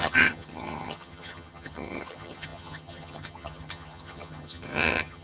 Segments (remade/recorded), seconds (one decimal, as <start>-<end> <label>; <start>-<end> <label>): 0.0-5.2 remade